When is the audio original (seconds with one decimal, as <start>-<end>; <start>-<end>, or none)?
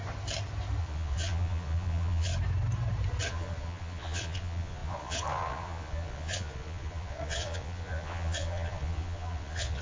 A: 0.0-0.8; 2.3-3.3